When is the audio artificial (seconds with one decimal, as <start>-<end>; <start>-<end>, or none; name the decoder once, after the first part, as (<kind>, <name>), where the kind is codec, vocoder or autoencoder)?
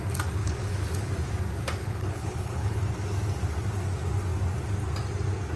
0.4-1.1 (codec, HILCodec); 1.8-2.8